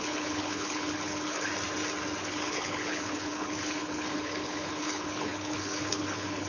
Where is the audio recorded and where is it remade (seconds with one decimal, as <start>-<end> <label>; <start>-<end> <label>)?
0.0-1.5 remade; 1.5-2.2 recorded; 2.2-6.5 remade